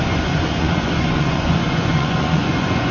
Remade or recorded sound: remade